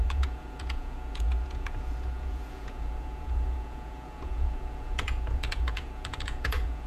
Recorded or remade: remade